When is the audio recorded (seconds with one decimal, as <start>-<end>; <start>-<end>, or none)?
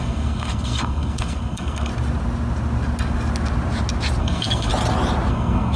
1.9-4.2; 4.7-5.3